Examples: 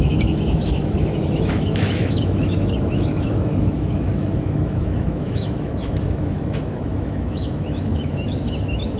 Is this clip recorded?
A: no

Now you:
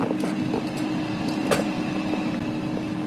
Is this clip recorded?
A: yes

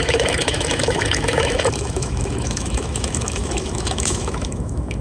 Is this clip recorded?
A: no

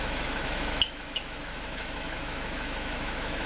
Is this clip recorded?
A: no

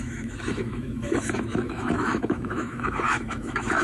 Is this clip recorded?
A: no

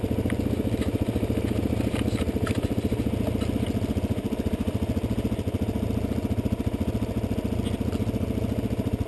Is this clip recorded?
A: yes